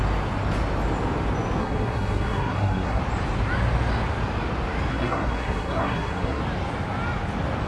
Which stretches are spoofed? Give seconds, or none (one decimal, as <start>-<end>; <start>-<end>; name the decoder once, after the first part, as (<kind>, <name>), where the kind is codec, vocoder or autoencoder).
1.6-3.0 (codec, SNAC); 4.9-6.4